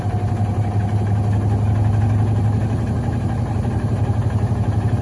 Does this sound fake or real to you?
real